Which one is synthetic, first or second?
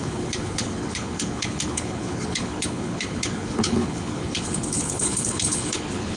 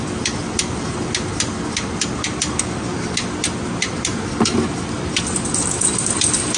first